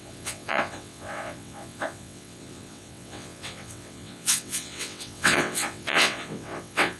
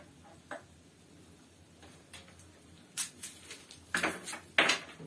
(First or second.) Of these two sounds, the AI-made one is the first